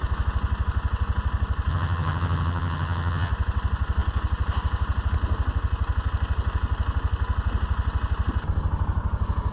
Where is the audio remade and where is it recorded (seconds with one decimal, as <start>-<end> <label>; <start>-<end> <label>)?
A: 0.0-1.7 recorded; 1.7-3.3 remade; 3.3-9.5 recorded